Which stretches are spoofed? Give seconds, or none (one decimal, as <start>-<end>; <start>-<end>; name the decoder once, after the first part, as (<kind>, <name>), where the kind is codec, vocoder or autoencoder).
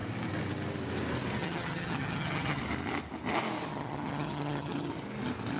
1.4-2.6 (vocoder, HiFi-GAN); 3.7-4.9